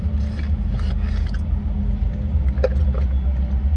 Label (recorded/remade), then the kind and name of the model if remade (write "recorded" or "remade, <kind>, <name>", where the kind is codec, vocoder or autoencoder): recorded